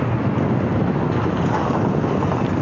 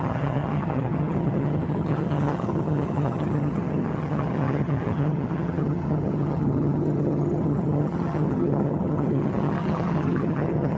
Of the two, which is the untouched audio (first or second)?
first